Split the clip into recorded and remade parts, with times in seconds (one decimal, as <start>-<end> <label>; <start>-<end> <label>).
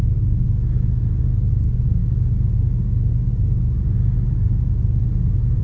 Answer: 0.0-5.6 recorded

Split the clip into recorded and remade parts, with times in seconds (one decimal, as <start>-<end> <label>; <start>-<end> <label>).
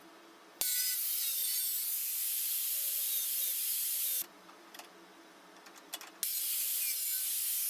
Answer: 0.0-3.7 recorded; 3.7-4.9 remade; 4.9-7.7 recorded